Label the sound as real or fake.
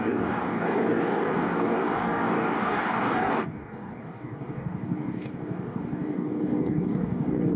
fake